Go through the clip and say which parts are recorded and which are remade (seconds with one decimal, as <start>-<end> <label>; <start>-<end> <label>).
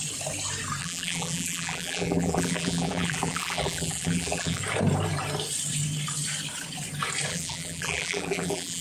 0.0-0.8 recorded; 0.8-4.6 remade; 4.6-7.3 recorded; 7.3-8.8 remade